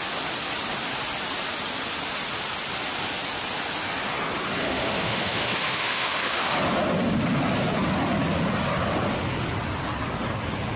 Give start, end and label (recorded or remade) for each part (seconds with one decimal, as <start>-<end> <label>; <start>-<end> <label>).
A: 0.0-4.6 recorded; 4.6-6.5 remade; 6.5-10.8 recorded